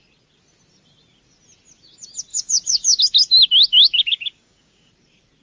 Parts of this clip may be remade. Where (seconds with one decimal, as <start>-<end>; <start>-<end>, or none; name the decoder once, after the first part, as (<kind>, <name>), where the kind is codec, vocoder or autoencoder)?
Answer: 2.3-3.0 (codec, DAC); 3.7-4.9